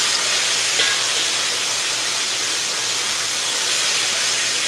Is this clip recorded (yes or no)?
yes